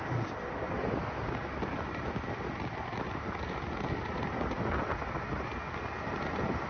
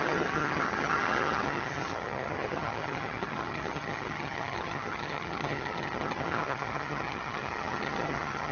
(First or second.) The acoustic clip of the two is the first